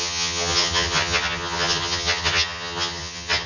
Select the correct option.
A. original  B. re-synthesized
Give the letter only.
B